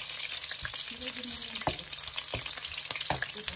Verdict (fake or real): real